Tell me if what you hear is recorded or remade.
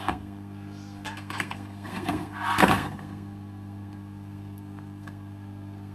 remade